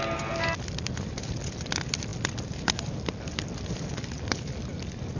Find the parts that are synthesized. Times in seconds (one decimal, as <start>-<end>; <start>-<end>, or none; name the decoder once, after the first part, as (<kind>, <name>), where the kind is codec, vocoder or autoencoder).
none